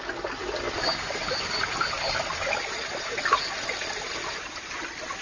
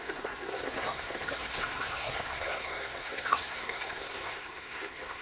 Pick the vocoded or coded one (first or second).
second